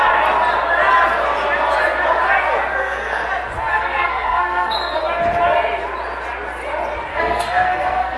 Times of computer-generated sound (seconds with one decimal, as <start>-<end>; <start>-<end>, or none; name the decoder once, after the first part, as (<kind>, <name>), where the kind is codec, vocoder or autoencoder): 2.7-3.3 (codec, SNAC); 3.7-5.0; 7.1-8.2